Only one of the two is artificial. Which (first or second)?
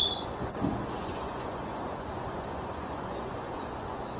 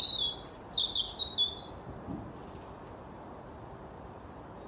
first